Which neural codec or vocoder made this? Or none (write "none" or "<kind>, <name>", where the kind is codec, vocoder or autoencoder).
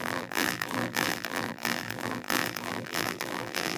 vocoder, BigVGAN v2